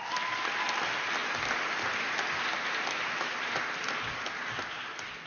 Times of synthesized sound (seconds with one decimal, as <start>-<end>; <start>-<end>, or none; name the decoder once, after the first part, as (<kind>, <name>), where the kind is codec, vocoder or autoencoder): none